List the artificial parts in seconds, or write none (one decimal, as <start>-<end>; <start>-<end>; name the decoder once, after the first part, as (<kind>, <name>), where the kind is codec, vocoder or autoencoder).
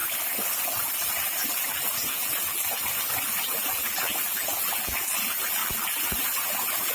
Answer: 1.0-2.8 (vocoder, BigVGAN v2); 3.4-6.9